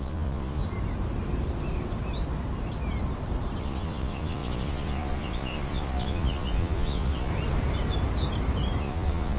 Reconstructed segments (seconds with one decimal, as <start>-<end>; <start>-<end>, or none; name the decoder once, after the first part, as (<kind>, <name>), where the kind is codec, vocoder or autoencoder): 0.0-0.6 (vocoder, Vocos); 3.6-7.3; 8.8-9.4